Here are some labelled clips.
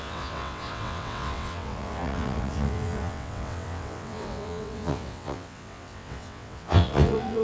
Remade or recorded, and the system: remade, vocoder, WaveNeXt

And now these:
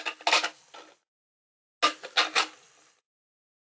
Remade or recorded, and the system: recorded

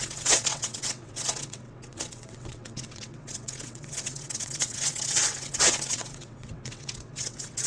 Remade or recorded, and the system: remade, vocoder, WaveNeXt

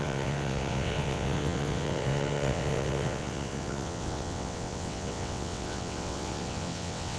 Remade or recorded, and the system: remade, vocoder, WaveNeXt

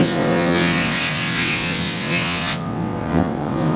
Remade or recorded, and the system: remade, vocoder, WaveNeXt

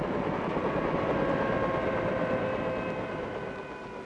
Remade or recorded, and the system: recorded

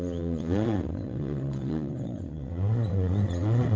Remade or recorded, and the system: remade, vocoder, WaveNeXt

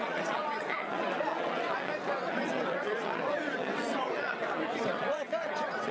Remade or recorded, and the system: remade, vocoder, WaveNeXt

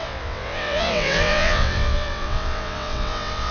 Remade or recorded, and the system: remade, vocoder, WaveNeXt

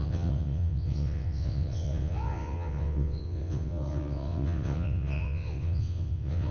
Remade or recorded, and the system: remade, vocoder, WaveNeXt